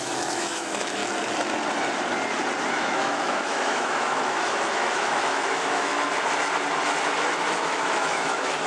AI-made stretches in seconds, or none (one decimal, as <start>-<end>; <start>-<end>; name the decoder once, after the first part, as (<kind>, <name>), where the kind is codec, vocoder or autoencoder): 0.0-1.0 (autoencoder, DAC-VAE); 2.7-5.9; 7.6-8.7

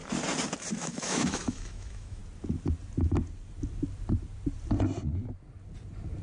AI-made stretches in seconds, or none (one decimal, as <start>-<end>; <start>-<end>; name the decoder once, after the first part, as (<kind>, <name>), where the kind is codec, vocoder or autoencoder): 0.8-2.2 (autoencoder, DAC-VAE)